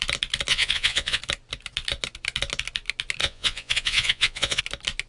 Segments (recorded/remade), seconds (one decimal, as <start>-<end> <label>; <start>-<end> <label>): 0.0-0.5 recorded; 0.5-1.2 remade; 1.2-3.2 recorded; 3.2-4.6 remade; 4.6-5.1 recorded